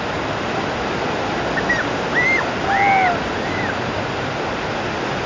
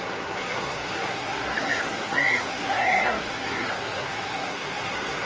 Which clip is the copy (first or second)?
second